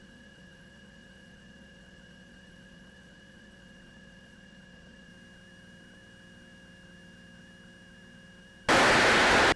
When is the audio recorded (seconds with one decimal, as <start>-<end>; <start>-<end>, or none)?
5.1-9.6